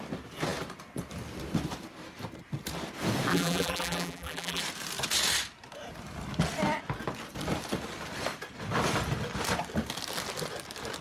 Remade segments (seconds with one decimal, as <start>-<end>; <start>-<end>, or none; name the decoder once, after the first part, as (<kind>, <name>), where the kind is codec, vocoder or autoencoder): 3.3-4.6 (vocoder, BigVGAN v2)